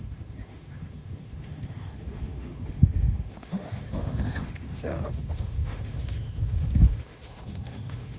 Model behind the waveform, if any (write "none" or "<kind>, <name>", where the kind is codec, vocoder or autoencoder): autoencoder, DAC-VAE